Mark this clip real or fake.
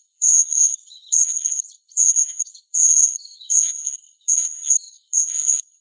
fake